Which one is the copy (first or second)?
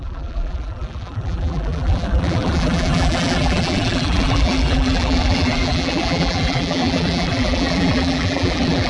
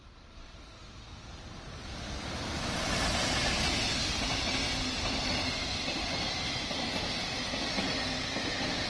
first